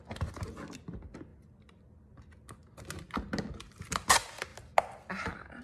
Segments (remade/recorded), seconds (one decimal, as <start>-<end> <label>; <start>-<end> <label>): 0.0-5.6 recorded